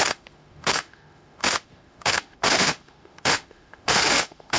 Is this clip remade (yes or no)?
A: yes